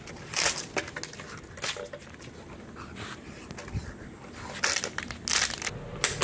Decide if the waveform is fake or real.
real